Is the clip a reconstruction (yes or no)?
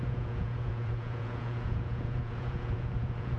yes